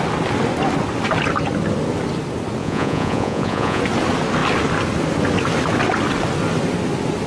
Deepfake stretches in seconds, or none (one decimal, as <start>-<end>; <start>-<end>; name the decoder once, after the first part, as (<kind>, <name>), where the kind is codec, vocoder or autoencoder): 2.6-3.8 (vocoder, Vocos)